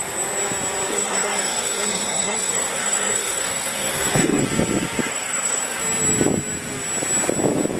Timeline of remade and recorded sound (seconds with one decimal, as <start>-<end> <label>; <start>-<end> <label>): 0.0-0.9 recorded; 0.9-4.4 remade; 4.4-5.1 recorded; 5.1-5.8 remade; 5.8-7.8 recorded